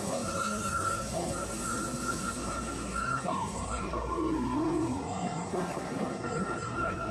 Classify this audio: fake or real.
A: fake